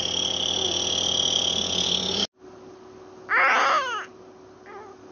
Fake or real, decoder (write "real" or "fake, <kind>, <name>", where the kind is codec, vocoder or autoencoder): real